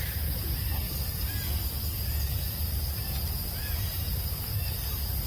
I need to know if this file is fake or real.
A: real